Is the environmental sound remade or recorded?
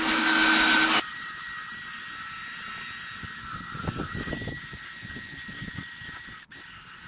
recorded